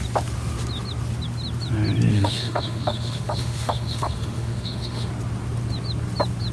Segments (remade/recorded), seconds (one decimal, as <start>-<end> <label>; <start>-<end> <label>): 0.0-2.1 recorded; 2.1-5.1 remade; 5.1-6.5 recorded